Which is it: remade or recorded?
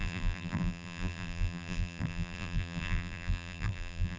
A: remade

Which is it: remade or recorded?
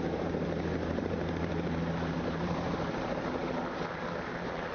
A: remade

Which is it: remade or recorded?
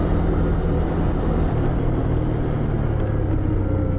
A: recorded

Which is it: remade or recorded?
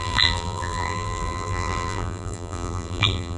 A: remade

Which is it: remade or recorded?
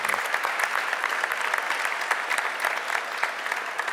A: recorded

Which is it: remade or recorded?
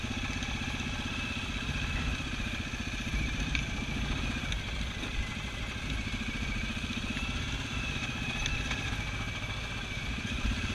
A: remade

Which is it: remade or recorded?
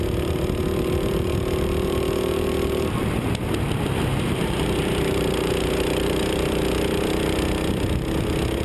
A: remade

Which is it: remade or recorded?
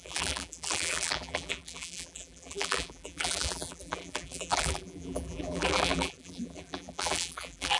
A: remade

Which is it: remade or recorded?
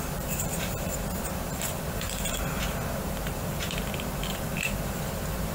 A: remade